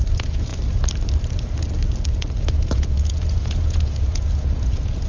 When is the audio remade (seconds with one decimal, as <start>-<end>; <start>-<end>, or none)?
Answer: 0.0-0.5; 2.1-5.1